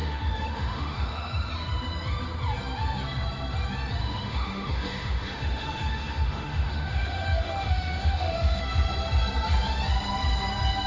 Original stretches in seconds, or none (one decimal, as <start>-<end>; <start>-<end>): 1.5-4.0; 8.6-10.9